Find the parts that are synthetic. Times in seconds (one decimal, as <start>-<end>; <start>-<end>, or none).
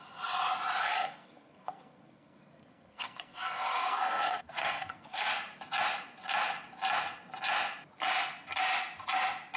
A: 0.8-5.3